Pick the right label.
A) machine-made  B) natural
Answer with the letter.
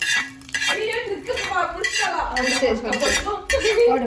A